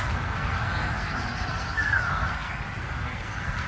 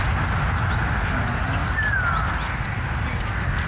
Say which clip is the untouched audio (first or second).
second